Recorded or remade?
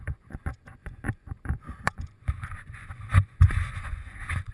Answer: remade